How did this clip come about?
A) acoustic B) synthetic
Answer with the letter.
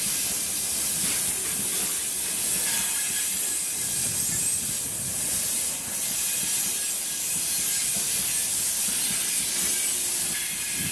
A